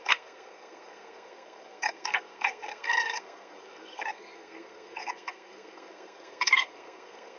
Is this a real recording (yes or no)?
no